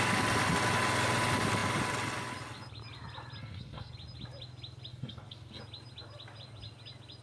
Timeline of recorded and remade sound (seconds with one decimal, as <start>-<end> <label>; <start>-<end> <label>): 0.0-3.4 recorded; 3.4-3.9 remade; 3.9-4.9 recorded; 4.9-5.6 remade; 5.6-7.2 recorded